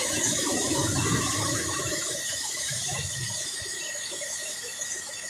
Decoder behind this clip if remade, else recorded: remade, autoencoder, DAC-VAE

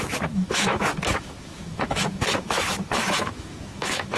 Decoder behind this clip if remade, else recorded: remade, autoencoder, DAC-VAE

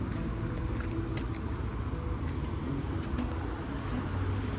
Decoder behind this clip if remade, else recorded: recorded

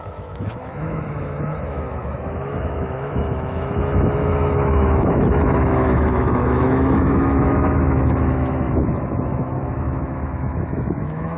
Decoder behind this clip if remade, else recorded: remade, autoencoder, DAC-VAE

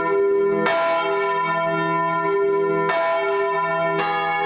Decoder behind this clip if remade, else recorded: recorded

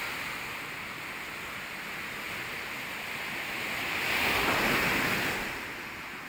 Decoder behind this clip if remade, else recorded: recorded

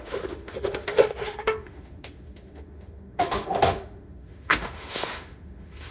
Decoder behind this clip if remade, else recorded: remade, autoencoder, DAC-VAE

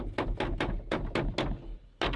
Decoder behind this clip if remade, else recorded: recorded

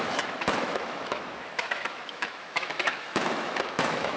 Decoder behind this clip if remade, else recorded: remade, autoencoder, DAC-VAE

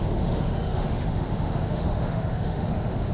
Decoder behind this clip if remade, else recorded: remade, autoencoder, DAC-VAE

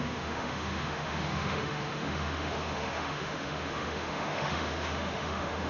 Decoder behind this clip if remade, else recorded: remade, autoencoder, DAC-VAE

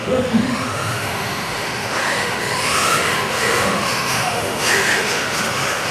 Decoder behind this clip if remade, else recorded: remade, autoencoder, DAC-VAE